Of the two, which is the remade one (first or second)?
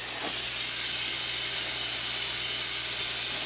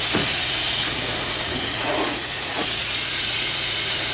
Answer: second